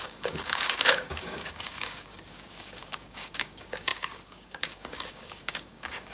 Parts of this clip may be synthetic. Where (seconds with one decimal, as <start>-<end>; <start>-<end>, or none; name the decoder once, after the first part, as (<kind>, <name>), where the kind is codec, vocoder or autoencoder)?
0.0-6.1 (codec, DAC)